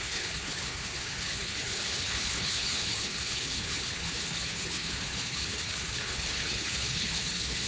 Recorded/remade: remade